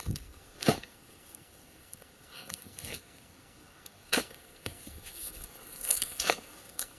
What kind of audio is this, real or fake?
fake